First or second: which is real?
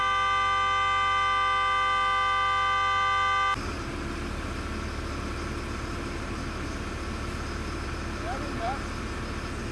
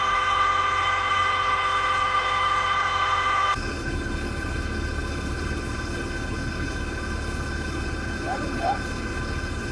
first